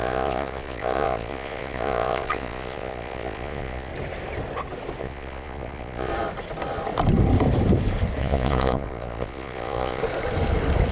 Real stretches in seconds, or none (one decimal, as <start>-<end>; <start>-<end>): 3.9-5.0; 6.1-8.2; 10.0-10.9